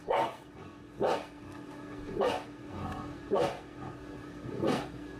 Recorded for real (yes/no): no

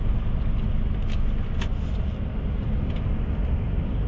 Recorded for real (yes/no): yes